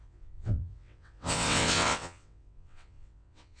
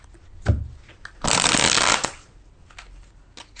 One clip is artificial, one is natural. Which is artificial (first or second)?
first